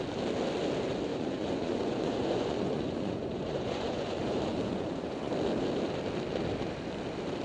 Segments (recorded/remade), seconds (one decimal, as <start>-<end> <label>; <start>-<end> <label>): 0.0-1.1 recorded; 1.1-5.3 remade; 5.3-7.4 recorded